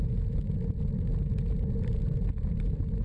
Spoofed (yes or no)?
no